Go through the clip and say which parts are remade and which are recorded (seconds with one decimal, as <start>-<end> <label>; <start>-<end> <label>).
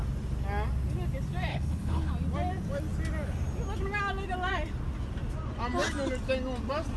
0.0-1.5 recorded; 1.5-2.1 remade; 2.1-7.0 recorded